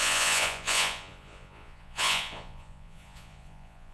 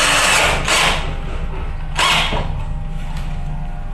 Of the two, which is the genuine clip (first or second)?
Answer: second